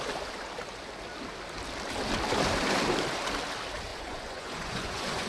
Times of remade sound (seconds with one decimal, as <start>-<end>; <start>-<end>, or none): 3.9-5.3